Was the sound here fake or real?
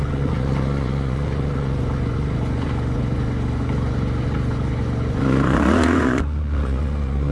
fake